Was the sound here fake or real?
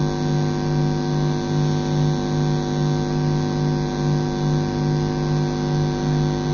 real